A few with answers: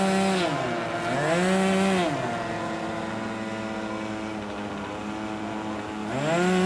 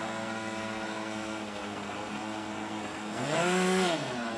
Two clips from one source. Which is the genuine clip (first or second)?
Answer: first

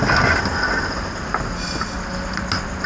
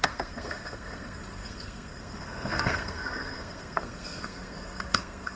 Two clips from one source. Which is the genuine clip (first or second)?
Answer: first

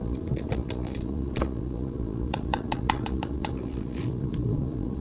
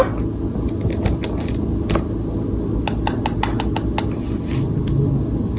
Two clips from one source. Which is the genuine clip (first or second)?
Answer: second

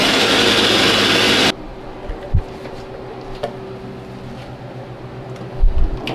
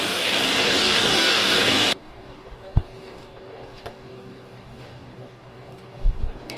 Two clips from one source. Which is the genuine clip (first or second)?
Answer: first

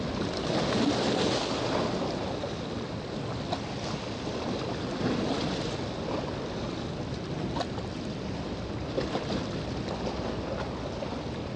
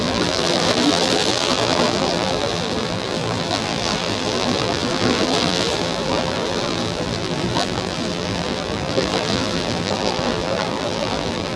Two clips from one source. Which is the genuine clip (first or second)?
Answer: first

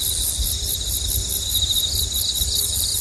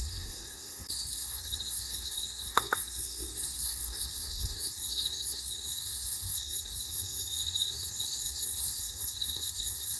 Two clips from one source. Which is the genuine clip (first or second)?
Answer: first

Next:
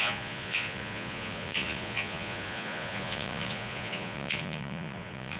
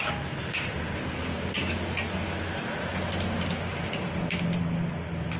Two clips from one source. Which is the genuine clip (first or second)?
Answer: second